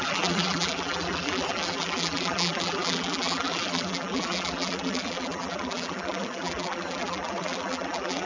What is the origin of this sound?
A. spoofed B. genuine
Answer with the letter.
A